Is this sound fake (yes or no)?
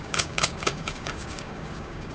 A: yes